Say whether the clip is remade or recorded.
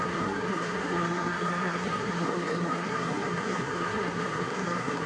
remade